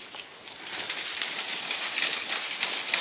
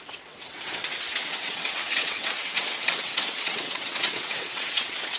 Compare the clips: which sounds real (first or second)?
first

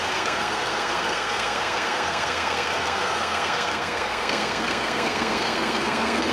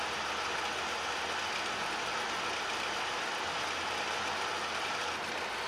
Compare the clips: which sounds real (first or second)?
second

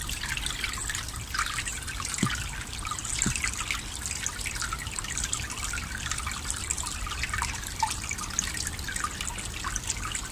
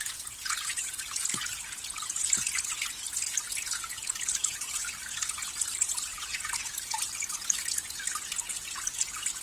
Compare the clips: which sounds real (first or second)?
first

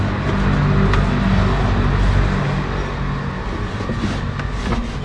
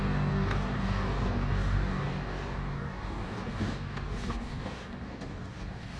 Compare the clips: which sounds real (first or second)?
first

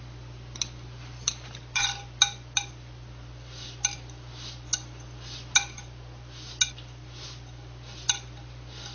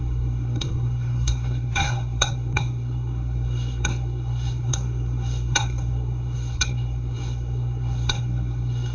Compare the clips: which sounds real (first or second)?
first